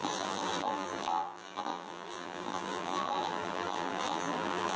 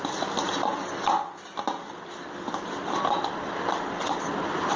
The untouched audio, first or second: second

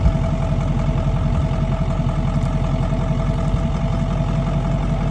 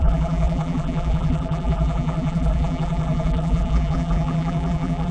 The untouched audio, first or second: first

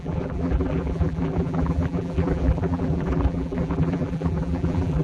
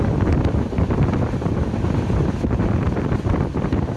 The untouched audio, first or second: second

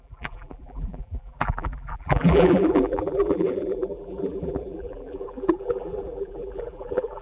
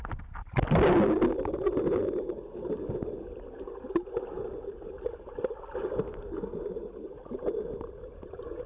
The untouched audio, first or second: second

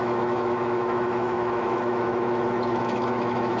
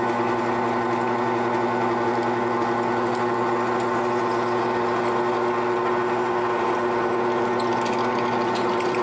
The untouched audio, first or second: second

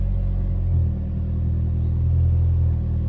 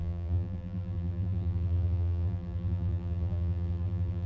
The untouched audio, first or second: first